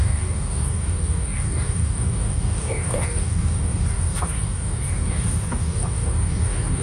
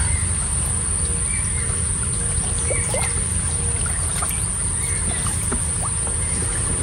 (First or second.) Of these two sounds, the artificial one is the first